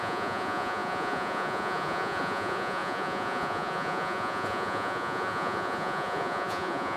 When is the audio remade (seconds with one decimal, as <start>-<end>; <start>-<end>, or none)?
0.0-7.0